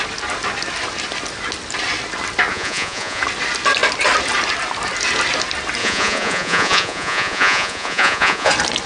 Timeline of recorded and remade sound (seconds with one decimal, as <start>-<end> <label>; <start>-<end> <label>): 0.0-2.5 recorded; 2.5-3.2 remade; 3.2-5.8 recorded; 5.8-8.5 remade; 8.5-8.9 recorded